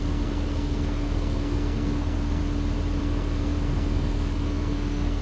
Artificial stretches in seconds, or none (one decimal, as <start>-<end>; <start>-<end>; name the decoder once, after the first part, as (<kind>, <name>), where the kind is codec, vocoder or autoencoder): 0.0-2.4 (codec, SNAC); 3.0-5.2